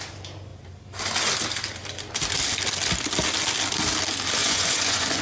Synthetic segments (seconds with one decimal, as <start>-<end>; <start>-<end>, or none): 4.4-5.2